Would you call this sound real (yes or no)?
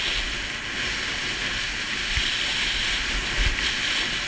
yes